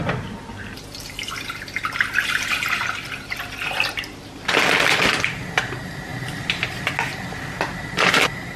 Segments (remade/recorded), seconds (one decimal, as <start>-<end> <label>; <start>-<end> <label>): 0.0-8.6 recorded